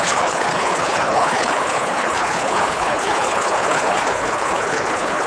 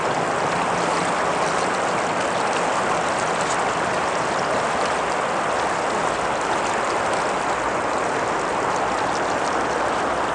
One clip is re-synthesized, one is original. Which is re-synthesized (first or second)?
first